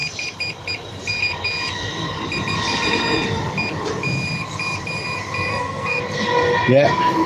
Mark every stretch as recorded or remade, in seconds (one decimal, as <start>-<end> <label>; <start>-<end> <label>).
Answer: 0.0-5.5 recorded; 5.5-6.0 remade; 6.0-7.3 recorded